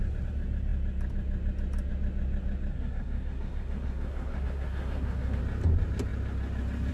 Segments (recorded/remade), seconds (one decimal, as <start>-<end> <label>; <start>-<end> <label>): 0.0-2.7 recorded; 2.7-5.4 remade; 5.4-6.9 recorded